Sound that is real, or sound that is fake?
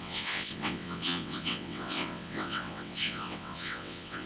fake